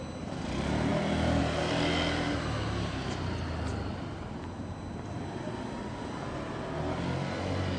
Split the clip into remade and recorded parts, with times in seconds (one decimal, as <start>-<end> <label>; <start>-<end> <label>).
0.0-7.8 recorded